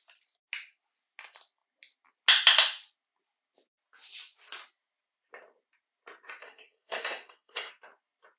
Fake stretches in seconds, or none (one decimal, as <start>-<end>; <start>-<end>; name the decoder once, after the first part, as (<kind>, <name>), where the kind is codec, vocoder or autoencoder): 6.4-7.7 (codec, SNAC)